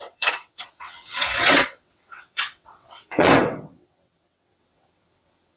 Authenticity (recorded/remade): remade